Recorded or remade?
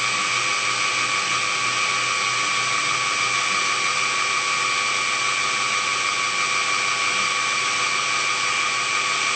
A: recorded